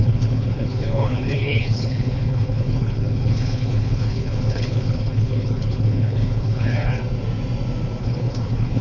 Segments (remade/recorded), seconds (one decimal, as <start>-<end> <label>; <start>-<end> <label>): 0.0-7.0 remade; 7.0-8.0 recorded; 8.0-8.8 remade

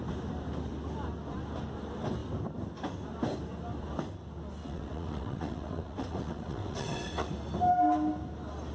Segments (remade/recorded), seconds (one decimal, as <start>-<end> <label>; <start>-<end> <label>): 0.0-4.6 recorded; 4.6-7.3 remade; 7.3-8.7 recorded

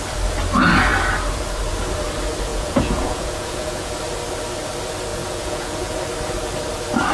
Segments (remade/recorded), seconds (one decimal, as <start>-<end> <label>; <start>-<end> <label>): 0.0-2.5 recorded; 2.5-3.9 remade; 3.9-5.1 recorded; 5.1-6.0 remade; 6.0-7.1 recorded

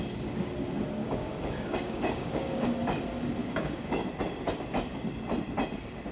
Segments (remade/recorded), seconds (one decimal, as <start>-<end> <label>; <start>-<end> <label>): 0.0-1.0 recorded; 1.0-2.8 remade; 2.8-3.4 recorded; 3.4-4.1 remade; 4.1-6.1 recorded

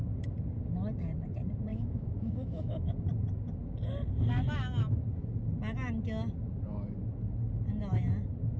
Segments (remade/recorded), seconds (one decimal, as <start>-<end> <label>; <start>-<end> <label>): 0.0-1.7 recorded; 1.7-2.9 remade; 2.9-8.6 recorded

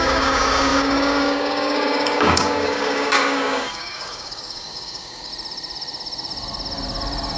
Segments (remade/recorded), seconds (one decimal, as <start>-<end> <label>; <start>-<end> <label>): 0.0-5.3 remade; 5.3-7.4 recorded